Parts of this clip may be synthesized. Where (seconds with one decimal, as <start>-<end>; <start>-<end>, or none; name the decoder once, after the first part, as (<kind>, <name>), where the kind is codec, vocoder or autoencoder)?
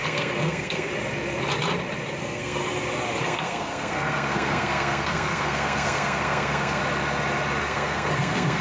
0.0-0.9 (codec, SNAC); 2.2-2.6; 3.2-6.8; 7.6-8.6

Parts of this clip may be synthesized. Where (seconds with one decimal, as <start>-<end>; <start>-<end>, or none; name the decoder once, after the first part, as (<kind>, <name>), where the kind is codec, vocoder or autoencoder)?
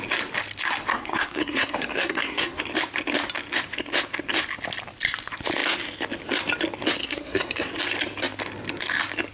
0.9-2.6 (codec, SNAC); 7.0-7.7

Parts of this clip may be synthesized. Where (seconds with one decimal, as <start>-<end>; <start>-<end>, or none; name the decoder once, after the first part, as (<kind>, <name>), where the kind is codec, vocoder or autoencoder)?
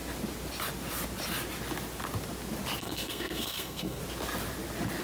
2.8-4.0 (codec, SNAC)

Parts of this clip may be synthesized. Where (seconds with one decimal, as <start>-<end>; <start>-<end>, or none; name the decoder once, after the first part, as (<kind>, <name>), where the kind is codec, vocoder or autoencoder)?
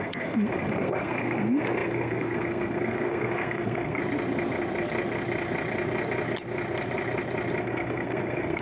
0.0-4.0 (codec, SNAC); 7.6-8.6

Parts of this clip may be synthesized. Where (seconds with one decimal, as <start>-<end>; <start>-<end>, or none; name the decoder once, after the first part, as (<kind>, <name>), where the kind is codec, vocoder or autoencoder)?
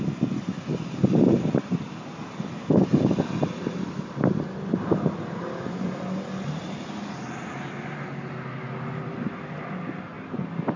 none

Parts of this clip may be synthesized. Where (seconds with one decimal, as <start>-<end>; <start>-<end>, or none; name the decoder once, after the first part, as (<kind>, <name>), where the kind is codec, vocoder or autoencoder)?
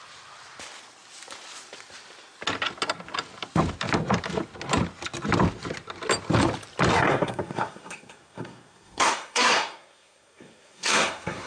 6.9-11.5 (codec, SNAC)